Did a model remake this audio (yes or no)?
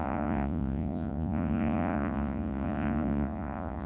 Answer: yes